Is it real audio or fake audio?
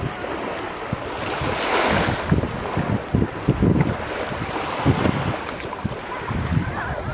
real